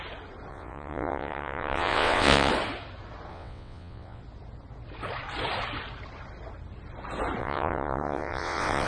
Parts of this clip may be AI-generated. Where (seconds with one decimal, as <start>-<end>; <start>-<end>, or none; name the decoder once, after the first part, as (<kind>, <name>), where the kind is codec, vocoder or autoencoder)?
0.5-2.5 (vocoder, WaveNeXt); 3.3-4.2; 7.4-8.9